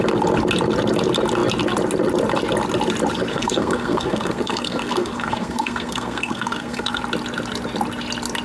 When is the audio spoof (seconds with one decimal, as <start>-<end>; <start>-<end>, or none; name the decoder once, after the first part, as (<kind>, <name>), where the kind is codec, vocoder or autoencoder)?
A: 3.3-7.0 (codec, SNAC)

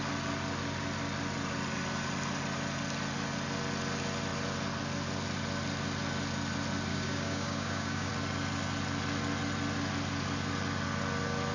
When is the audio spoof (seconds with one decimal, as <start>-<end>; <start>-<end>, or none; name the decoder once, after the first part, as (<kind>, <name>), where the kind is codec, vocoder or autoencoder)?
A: 6.9-8.1 (codec, DAC)